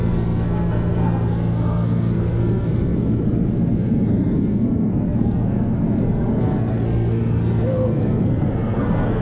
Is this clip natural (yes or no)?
no